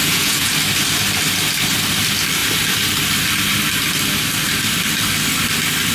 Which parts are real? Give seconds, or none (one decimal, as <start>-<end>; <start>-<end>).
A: 0.5-5.9